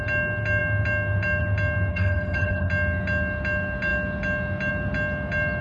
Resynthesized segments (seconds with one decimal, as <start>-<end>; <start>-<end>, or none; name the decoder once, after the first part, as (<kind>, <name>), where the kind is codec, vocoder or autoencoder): 1.9-2.7 (codec, HILCodec)